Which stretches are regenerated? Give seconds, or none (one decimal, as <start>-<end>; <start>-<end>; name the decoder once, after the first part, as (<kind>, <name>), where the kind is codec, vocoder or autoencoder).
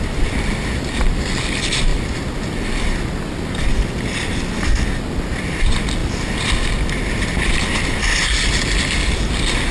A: none